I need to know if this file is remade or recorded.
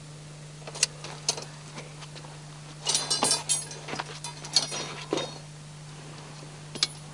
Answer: recorded